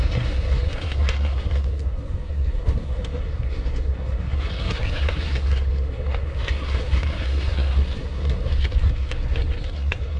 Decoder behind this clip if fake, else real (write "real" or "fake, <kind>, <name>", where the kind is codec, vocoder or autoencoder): fake, codec, SNAC